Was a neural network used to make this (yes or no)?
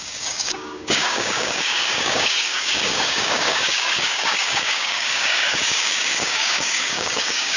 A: yes